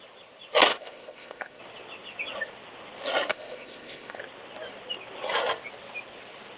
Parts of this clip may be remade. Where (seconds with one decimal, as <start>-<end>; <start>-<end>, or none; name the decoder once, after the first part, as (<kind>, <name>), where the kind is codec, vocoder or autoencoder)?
0.7-1.6 (codec, ZipCodec); 3.3-4.2